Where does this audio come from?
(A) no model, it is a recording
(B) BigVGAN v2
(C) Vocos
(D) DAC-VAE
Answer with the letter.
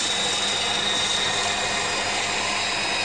A